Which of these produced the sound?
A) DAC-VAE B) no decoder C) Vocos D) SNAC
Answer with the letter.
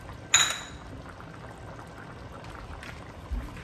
B